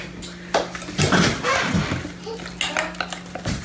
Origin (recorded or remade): recorded